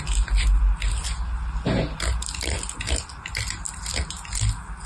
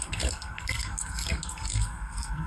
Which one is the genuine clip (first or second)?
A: first